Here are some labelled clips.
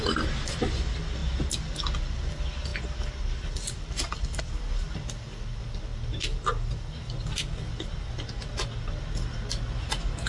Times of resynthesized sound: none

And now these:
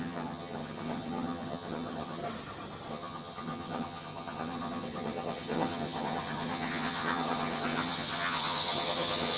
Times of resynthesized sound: 0.0-2.2 (vocoder, HiFi-GAN); 2.9-9.4

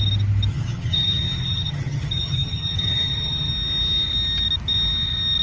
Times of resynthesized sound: 0.5-3.5 (vocoder, HiFi-GAN)

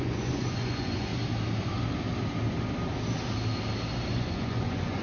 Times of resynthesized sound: 0.0-1.1 (vocoder, Vocos); 4.1-5.0

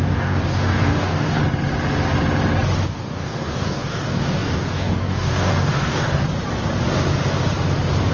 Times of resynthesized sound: 0.0-1.4 (codec, DAC); 2.8-6.2